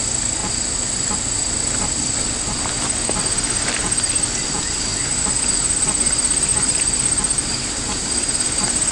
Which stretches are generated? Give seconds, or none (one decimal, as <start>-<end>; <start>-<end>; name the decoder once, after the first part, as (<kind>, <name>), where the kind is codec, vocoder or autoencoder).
4.9-5.6 (vocoder, BigVGAN v2); 6.5-8.0